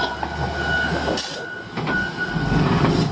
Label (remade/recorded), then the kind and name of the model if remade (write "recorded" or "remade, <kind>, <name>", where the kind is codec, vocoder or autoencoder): recorded